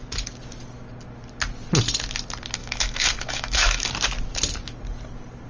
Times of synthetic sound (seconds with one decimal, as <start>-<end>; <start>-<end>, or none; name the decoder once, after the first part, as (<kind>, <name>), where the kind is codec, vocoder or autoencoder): 2.6-3.9 (autoencoder, DAC-VAE)

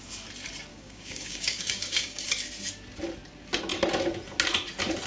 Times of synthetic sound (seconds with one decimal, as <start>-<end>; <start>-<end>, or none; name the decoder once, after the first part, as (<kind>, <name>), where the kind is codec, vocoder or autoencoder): 0.7-2.3 (codec, DAC)